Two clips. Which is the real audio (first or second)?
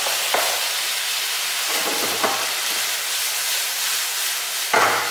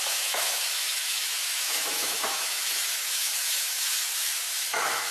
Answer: first